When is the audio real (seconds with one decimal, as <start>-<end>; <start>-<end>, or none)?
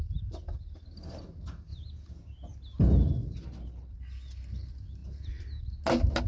0.5-6.3